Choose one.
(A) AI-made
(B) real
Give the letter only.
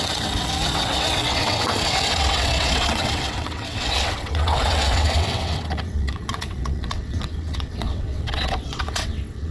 A